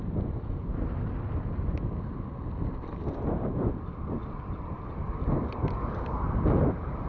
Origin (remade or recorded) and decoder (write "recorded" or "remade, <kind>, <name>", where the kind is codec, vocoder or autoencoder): recorded